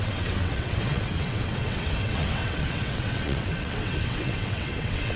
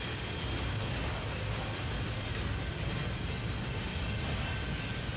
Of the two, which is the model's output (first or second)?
first